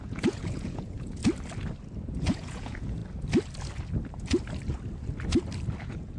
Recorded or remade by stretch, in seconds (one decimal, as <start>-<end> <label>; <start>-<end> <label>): 0.0-1.2 remade; 1.2-2.1 recorded; 2.1-3.0 remade; 3.0-5.8 recorded; 5.8-6.2 remade